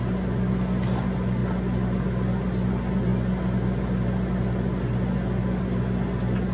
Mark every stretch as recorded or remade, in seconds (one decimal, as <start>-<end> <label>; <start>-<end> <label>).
0.0-6.5 recorded